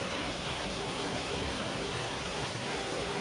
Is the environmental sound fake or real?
fake